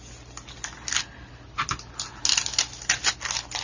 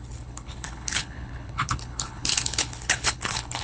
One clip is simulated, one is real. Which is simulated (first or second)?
second